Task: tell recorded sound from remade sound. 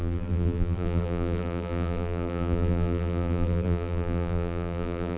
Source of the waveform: remade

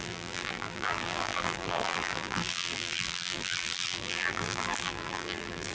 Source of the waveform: remade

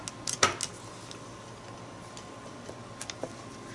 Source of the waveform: recorded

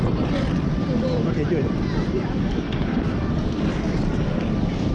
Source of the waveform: remade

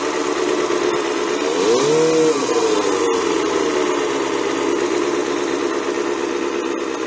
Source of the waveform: recorded